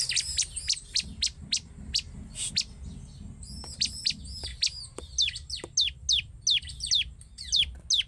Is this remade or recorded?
recorded